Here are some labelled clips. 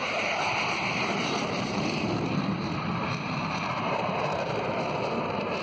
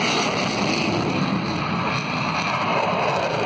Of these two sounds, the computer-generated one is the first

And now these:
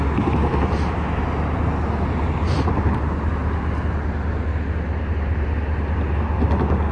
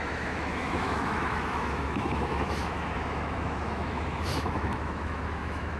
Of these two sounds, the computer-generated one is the second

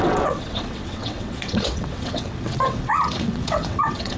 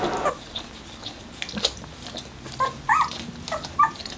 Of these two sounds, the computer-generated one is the first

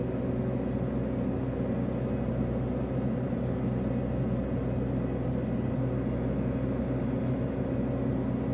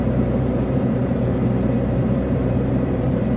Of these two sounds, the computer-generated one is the second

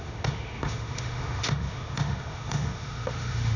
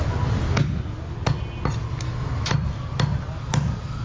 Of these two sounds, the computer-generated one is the first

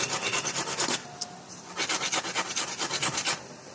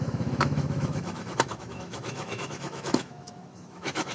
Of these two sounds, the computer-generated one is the second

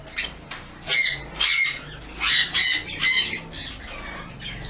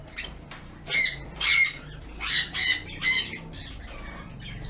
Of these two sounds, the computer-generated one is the second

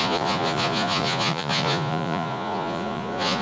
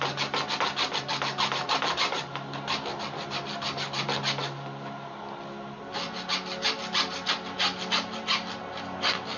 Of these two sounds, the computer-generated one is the first